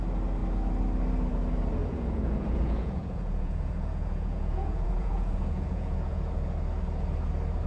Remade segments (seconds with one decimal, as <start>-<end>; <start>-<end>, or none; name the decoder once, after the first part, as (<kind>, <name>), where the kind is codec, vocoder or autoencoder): 1.8-6.3 (vocoder, Vocos)

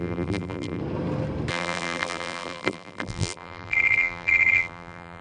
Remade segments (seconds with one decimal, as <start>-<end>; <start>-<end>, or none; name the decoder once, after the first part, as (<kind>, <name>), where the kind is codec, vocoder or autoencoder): 0.0-0.8 (vocoder, BigVGAN v2); 1.5-5.2

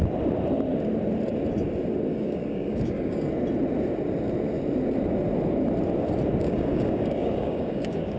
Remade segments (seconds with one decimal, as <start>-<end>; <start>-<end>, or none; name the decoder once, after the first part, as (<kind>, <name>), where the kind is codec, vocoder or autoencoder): 2.1-3.3 (codec, DAC); 6.4-8.2

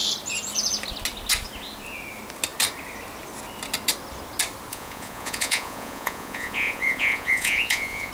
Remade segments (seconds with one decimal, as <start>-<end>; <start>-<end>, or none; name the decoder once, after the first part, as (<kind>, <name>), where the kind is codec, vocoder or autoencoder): 4.7-8.1 (vocoder, Vocos)

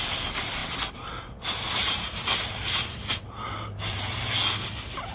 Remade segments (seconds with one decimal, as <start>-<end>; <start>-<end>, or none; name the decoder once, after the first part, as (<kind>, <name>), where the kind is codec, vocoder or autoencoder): 1.8-4.2 (vocoder, BigVGAN v2)

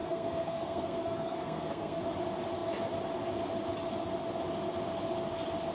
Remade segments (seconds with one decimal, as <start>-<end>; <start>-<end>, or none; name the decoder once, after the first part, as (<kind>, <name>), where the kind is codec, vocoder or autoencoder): 0.0-2.0 (codec, SNAC)

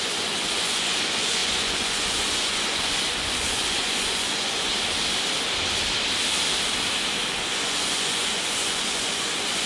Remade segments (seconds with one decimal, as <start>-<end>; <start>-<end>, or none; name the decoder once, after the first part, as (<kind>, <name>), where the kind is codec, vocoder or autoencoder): 0.0-4.7 (vocoder, Vocos); 7.3-9.7

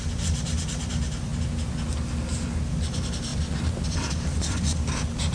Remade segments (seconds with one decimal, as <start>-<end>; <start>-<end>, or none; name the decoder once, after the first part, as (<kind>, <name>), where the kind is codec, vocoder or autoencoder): 0.0-1.3 (vocoder, BigVGAN v2); 2.7-3.3; 3.9-5.3